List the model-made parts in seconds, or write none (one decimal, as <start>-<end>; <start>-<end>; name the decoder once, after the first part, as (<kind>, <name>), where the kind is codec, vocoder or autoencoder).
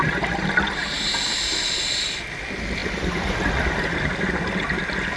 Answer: none